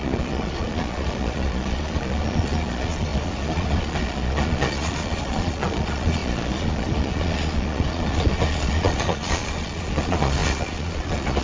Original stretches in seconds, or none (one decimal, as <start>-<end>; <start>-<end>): none